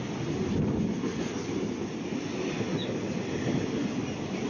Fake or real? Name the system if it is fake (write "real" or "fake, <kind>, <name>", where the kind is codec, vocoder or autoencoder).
real